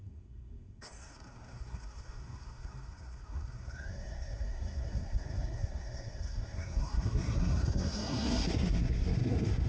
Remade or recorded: remade